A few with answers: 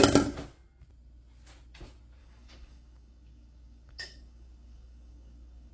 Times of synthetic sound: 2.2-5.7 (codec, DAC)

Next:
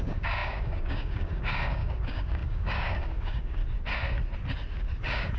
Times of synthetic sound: 0.0-3.6 (codec, DAC); 5.0-5.4

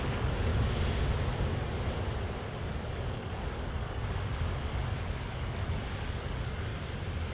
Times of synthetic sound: 0.0-0.5 (codec, DAC); 2.7-6.7

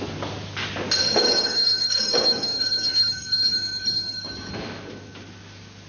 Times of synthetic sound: 1.0-4.5 (codec, DAC)